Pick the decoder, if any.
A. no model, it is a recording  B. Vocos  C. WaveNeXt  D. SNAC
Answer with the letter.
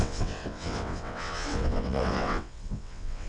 C